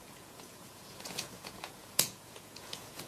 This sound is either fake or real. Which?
fake